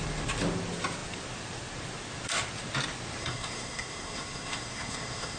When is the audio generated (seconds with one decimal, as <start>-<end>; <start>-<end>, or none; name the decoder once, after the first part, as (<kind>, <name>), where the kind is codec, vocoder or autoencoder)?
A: 3.2-5.4 (codec, SNAC)